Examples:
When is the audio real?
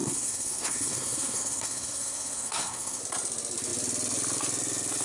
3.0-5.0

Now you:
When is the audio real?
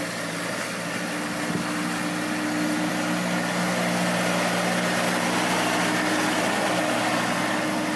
0.0-8.0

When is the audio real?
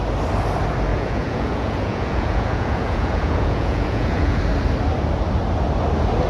0.0-0.9; 4.4-6.3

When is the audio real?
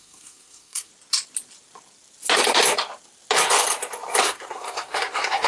0.9-4.2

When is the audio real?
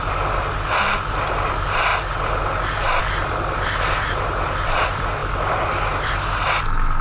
none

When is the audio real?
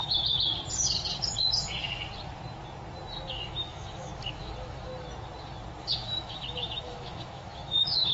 0.5-3.3; 4.9-5.8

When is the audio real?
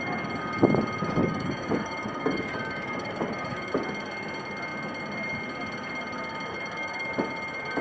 0.0-1.2; 3.7-6.5; 7.1-7.8